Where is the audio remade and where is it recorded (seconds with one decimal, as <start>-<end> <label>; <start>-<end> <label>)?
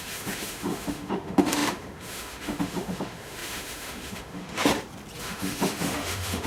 0.0-4.7 remade; 4.7-5.2 recorded; 5.2-6.5 remade